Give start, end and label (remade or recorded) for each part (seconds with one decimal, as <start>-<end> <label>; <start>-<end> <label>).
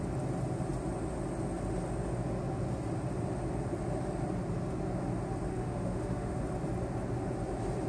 0.0-5.5 recorded; 5.5-6.4 remade; 6.4-7.9 recorded